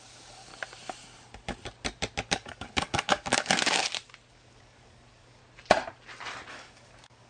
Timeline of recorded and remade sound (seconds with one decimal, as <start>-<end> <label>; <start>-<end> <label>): 0.0-0.5 remade; 0.5-2.3 recorded; 2.3-3.8 remade; 3.8-4.3 recorded; 4.3-5.4 remade; 5.4-6.5 recorded; 6.5-7.3 remade